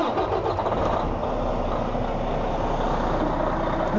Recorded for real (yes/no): yes